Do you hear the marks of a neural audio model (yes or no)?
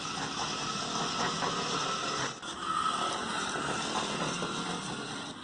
no